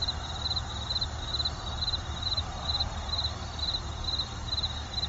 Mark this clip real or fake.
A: real